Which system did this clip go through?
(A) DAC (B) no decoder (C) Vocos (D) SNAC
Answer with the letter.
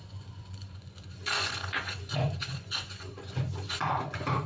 C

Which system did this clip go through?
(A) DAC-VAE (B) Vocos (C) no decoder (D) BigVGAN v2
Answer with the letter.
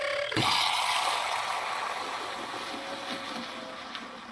C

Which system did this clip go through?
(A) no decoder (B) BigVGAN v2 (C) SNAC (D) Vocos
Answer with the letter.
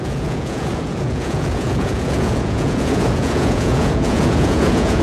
D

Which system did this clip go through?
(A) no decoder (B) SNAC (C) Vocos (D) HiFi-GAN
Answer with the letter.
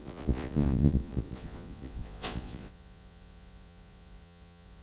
C